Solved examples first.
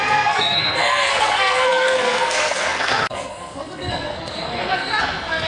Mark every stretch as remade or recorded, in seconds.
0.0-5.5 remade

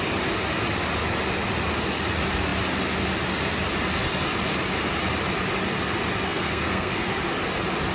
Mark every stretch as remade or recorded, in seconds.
0.0-6.3 recorded; 6.3-7.1 remade; 7.1-7.9 recorded